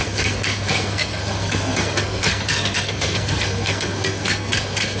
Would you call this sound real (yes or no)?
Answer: no